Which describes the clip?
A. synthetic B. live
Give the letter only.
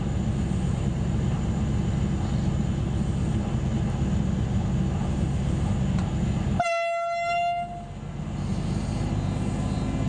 B